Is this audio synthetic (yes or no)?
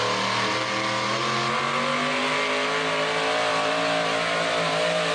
no